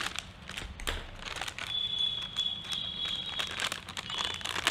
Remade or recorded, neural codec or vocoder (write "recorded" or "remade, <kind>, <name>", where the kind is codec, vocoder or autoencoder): recorded